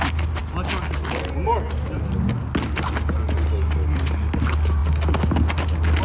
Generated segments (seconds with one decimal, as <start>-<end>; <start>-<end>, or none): none